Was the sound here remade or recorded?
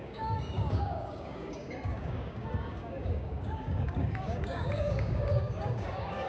remade